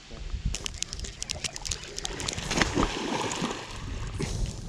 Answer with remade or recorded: recorded